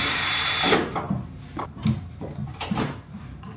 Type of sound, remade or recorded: remade